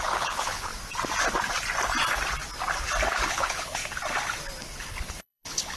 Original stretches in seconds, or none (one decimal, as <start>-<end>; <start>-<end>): 0.7-3.1; 3.8-4.6